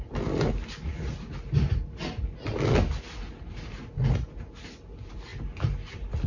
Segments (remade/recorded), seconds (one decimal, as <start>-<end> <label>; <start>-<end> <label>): 0.0-6.3 recorded